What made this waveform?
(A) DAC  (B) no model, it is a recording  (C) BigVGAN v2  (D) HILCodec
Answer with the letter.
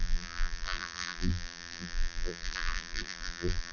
C